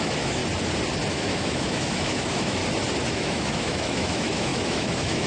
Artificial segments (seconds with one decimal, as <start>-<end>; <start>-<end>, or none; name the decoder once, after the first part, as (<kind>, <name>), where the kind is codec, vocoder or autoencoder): 0.0-0.4 (autoencoder, DAC-VAE); 1.1-2.6; 3.1-5.3